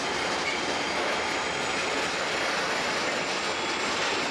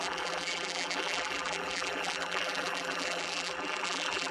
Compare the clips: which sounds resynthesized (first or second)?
second